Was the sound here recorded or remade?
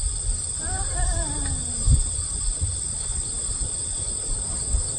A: recorded